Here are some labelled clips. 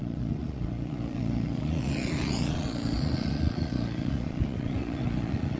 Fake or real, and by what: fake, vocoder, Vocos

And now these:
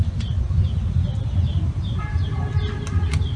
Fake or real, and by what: real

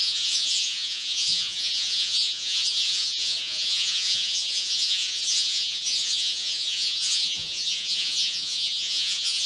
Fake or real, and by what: fake, vocoder, Vocos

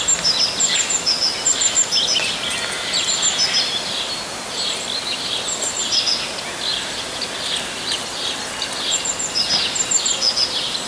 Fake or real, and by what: real